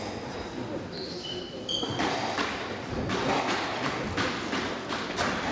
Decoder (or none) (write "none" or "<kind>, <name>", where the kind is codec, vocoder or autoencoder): none